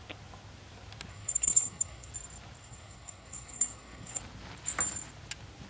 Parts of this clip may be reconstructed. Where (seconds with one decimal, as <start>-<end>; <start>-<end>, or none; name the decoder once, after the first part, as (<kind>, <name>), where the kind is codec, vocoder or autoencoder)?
1.1-2.1 (codec, SNAC); 2.6-4.2